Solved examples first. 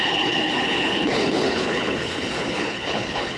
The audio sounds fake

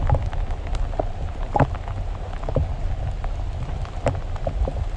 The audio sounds real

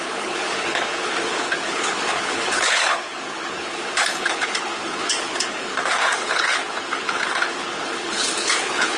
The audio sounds fake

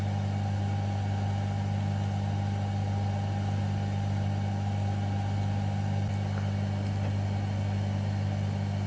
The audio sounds real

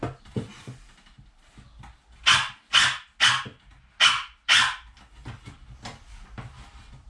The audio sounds real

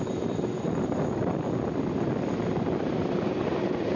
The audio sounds real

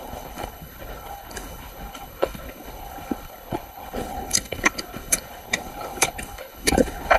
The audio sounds fake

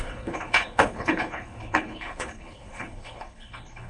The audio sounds fake